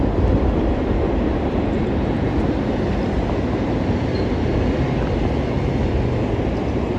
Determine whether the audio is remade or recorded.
recorded